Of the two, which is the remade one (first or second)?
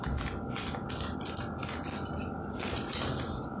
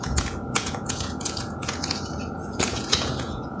second